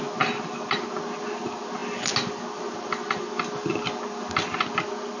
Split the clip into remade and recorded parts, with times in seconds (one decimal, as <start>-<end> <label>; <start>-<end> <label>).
0.0-5.2 recorded